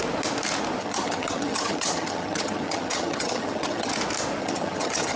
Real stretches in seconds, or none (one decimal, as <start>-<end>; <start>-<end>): 0.0-0.8; 3.9-4.4